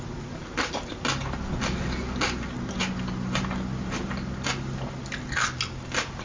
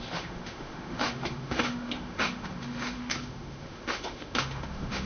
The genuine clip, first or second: first